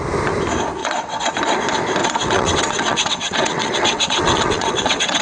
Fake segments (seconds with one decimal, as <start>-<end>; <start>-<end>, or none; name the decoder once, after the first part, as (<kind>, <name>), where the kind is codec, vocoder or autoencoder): 0.8-1.3 (vocoder, WaveNeXt); 2.0-5.2